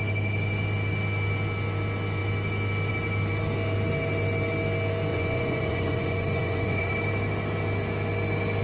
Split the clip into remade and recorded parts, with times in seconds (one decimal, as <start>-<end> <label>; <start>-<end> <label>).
0.0-5.1 recorded; 5.1-6.9 remade; 6.9-8.6 recorded